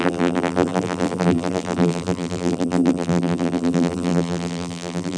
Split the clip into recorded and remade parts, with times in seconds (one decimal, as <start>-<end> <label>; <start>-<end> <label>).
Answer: 0.0-5.2 remade